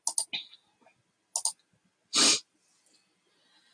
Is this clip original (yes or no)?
yes